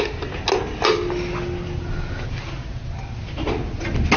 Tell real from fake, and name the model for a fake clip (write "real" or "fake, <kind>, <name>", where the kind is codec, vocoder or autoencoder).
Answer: real